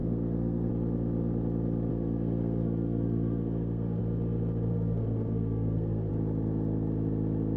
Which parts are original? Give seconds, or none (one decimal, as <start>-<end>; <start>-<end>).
0.7-1.9; 4.0-4.7; 6.1-7.6